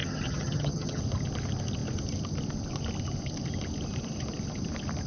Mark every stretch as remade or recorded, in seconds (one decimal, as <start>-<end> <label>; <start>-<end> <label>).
0.0-1.0 remade; 1.0-5.1 recorded